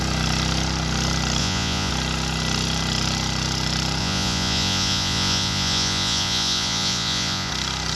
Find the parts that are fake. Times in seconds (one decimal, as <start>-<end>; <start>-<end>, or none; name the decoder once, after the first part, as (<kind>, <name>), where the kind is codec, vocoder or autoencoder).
1.4-1.9 (vocoder, Vocos); 4.0-7.5